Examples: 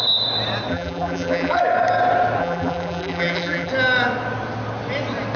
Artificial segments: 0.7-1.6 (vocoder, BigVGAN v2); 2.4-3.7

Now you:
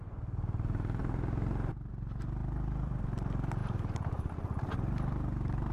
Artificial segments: 2.4-3.0 (vocoder, BigVGAN v2); 3.6-5.1

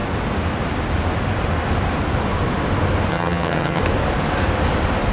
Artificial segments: 3.1-3.8 (vocoder, HiFi-GAN)